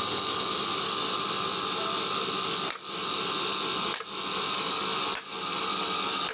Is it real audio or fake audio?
real